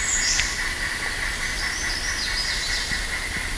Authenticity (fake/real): real